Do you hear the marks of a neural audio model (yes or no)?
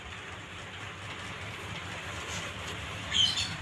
no